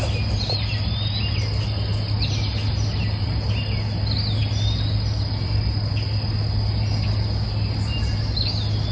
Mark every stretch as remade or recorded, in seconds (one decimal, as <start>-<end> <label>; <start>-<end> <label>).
0.0-8.9 recorded